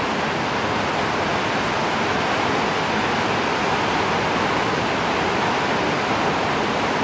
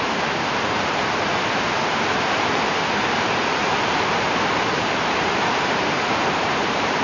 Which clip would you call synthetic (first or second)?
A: second